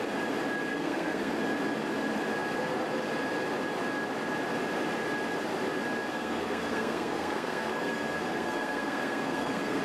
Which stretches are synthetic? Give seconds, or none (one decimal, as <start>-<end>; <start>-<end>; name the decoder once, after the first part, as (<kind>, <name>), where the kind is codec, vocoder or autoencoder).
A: 0.7-1.3 (codec, SNAC); 6.1-9.8